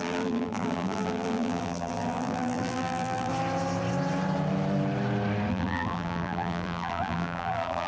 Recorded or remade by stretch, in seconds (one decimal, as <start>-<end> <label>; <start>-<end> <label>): 0.0-3.3 remade; 3.3-5.5 recorded; 5.5-7.9 remade